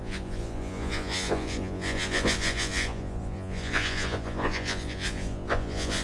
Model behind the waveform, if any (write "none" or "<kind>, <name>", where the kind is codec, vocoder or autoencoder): vocoder, Vocos